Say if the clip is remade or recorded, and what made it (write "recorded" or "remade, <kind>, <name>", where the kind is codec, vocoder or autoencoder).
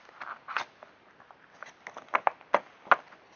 recorded